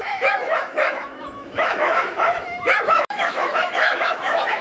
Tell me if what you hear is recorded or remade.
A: remade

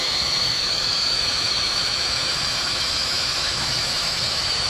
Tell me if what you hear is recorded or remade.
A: remade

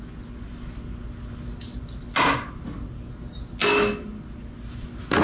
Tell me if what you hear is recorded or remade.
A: recorded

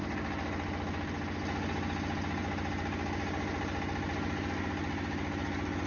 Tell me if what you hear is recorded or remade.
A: recorded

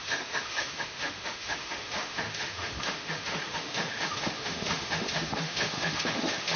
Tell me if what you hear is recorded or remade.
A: remade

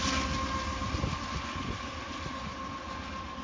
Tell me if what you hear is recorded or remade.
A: recorded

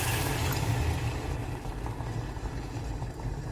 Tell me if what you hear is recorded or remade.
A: recorded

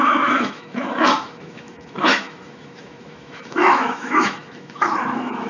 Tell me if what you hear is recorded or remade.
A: remade